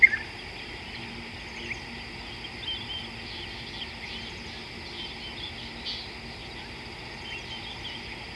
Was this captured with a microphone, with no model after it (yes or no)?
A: yes